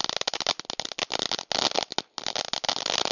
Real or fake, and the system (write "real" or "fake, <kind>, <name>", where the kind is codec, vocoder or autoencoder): real